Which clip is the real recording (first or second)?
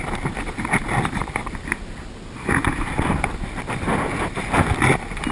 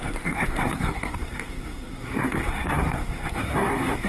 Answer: first